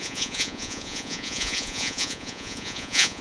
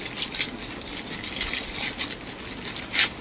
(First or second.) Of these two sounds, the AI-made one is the first